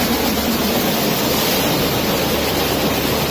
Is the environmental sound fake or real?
real